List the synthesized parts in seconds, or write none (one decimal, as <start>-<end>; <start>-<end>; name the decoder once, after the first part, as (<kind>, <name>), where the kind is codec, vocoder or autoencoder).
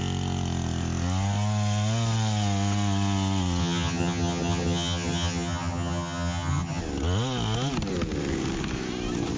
3.6-6.8 (vocoder, HiFi-GAN)